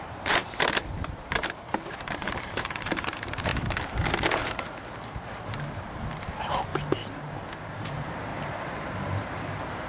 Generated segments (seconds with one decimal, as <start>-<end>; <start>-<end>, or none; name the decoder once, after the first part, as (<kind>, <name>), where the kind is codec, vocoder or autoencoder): 0.0-0.4 (vocoder, BigVGAN v2); 1.0-3.5; 4.1-6.7; 7.6-8.3; 8.8-9.9